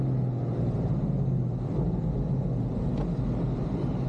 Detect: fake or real real